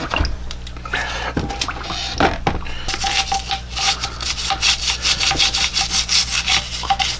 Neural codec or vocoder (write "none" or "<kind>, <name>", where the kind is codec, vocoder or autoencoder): none